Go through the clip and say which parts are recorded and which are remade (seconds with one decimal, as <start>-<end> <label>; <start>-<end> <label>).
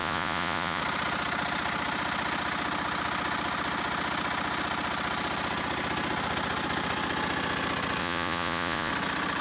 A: 0.0-0.8 remade; 0.8-8.0 recorded; 8.0-8.9 remade; 8.9-9.4 recorded